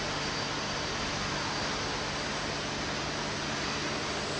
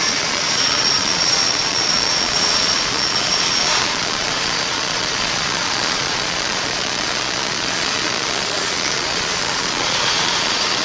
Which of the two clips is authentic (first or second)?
first